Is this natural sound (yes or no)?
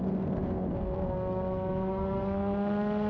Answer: no